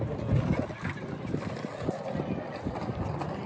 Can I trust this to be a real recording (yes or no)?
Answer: yes